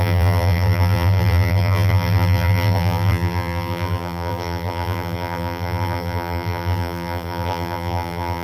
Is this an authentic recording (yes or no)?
no